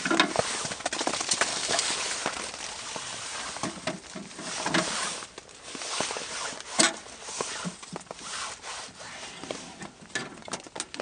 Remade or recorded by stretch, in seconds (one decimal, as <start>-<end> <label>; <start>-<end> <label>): 0.0-1.5 recorded; 1.5-2.0 remade; 2.0-11.0 recorded